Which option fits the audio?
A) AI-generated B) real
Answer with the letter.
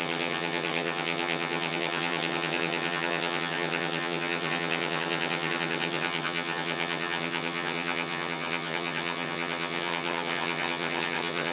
A